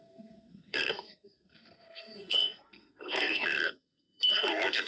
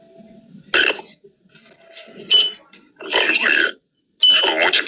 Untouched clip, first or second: second